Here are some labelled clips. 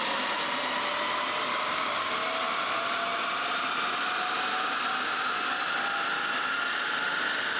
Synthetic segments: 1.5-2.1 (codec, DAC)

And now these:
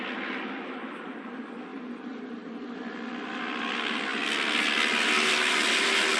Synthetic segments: 1.7-2.3 (vocoder, BigVGAN v2)

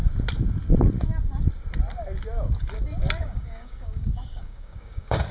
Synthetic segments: 3.2-5.3 (codec, DAC)

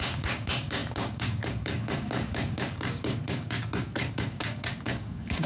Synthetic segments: 0.0-5.5 (codec, DAC)